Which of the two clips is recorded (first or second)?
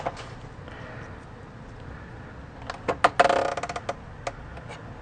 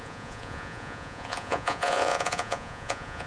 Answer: first